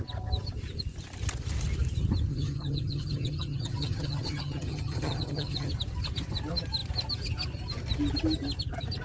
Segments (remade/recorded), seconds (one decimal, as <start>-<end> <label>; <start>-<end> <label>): 0.0-2.3 recorded; 2.3-5.7 remade; 5.7-9.0 recorded

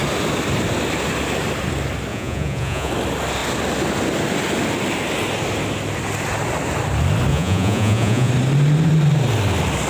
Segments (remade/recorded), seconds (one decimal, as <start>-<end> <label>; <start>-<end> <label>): 0.0-2.1 recorded; 2.1-2.9 remade; 2.9-7.3 recorded; 7.3-8.3 remade; 8.3-9.9 recorded

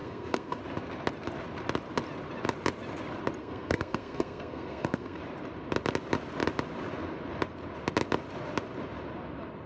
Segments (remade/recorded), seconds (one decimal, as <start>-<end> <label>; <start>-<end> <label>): 0.0-0.6 remade; 0.6-3.4 recorded; 3.4-5.2 remade; 5.2-9.7 recorded

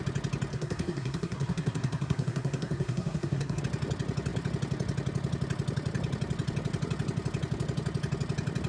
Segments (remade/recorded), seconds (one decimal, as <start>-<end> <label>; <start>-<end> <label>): 0.0-0.5 recorded; 0.5-3.6 remade; 3.6-8.7 recorded

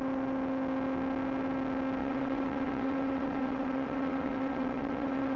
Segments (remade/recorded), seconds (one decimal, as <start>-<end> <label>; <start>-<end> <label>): 0.0-2.0 recorded; 2.0-5.4 remade